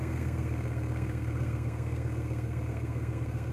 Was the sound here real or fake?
fake